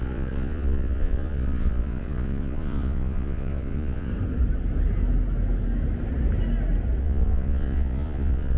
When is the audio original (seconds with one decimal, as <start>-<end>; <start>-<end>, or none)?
4.1-7.0